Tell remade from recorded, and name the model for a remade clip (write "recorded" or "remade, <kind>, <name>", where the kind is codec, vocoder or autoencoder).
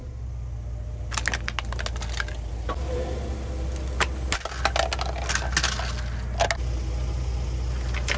recorded